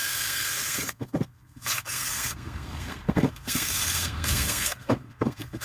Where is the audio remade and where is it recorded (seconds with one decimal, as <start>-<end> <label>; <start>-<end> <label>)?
0.0-5.6 remade